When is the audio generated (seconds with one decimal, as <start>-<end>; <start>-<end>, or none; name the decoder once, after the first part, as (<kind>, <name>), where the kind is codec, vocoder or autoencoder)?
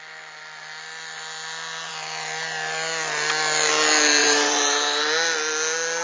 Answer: 4.2-5.0 (vocoder, BigVGAN v2)